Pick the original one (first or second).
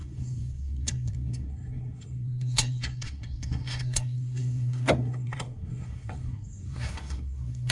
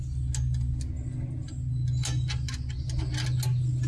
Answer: second